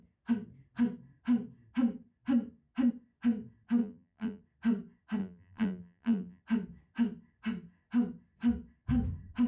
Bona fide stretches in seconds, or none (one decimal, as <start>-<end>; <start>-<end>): 0.0-3.8; 4.4-5.2; 6.4-9.5